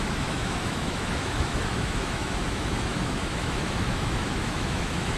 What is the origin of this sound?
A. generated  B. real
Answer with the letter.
A